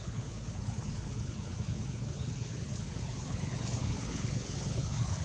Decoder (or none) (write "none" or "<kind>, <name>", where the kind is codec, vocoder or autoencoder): codec, HILCodec